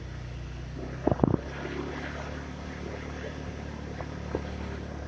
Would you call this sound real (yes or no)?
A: yes